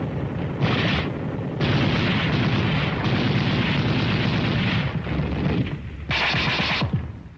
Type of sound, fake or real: real